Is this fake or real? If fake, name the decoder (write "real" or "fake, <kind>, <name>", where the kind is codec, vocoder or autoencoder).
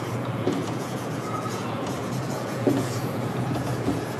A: fake, vocoder, Vocos